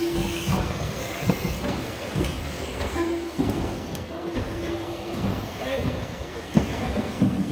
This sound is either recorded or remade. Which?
remade